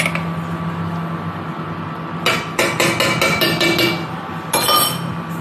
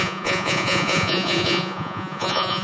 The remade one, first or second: second